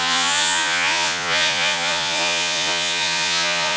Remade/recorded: remade